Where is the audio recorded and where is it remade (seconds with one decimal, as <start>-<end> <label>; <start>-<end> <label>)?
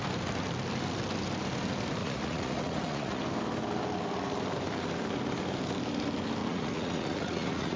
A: 0.0-2.0 recorded; 2.0-3.2 remade; 3.2-6.4 recorded; 6.4-7.8 remade